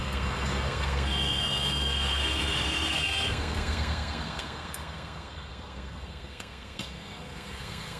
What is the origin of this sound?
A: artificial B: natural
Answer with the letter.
A